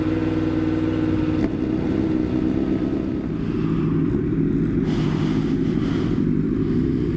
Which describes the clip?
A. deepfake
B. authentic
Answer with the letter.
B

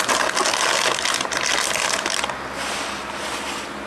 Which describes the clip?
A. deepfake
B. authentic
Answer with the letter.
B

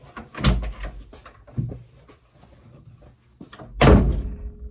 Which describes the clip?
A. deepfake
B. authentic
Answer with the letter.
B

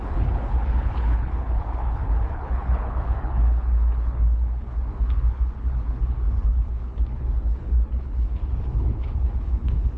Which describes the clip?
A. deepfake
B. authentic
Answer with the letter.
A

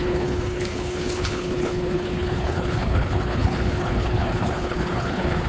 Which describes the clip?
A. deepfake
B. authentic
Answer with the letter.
A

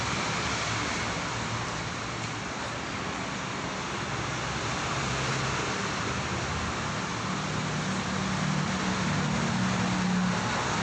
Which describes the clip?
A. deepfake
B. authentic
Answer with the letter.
B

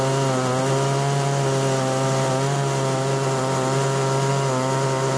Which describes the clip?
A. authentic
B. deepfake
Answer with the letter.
A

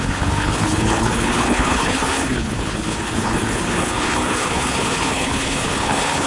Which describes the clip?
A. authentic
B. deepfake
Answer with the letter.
B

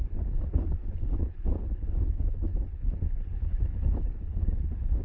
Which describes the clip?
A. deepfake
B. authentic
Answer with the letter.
A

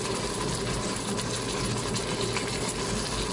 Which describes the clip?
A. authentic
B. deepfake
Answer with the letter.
A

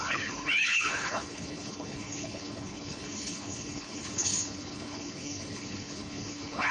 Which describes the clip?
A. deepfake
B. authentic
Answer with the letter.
A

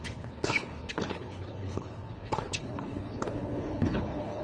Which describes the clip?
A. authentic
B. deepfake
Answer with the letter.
B